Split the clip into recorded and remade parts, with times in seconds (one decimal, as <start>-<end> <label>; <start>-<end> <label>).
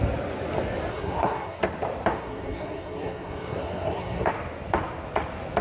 0.0-0.9 recorded; 0.9-1.6 remade; 1.6-2.1 recorded; 2.1-4.3 remade; 4.3-5.6 recorded